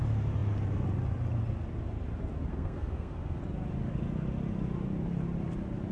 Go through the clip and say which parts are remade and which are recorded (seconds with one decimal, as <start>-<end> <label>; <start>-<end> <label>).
0.0-2.5 recorded; 2.5-3.4 remade; 3.4-5.9 recorded